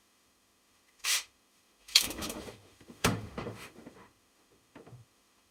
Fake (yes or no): yes